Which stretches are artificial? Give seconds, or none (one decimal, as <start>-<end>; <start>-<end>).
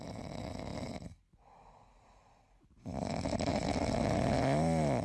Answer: none